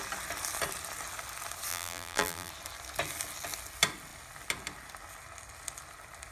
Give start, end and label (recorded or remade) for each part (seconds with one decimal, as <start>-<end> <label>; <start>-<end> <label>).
0.0-1.7 recorded; 1.7-2.5 remade; 2.5-6.3 recorded